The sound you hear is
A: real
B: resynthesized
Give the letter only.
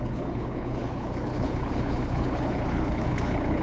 B